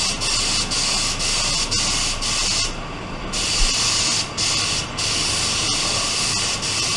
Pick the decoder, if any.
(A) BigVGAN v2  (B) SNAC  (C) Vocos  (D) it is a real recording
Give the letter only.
D